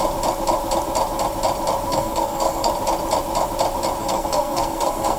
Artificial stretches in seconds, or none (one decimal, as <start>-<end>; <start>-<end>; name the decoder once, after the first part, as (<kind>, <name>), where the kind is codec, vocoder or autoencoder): 1.9-2.7 (codec, SNAC); 4.0-5.2